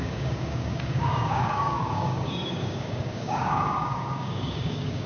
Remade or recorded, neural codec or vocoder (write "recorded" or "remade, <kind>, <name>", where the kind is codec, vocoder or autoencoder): remade, codec, DAC